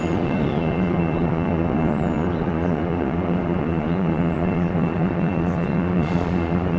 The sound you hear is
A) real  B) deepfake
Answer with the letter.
B